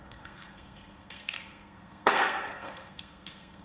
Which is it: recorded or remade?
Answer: remade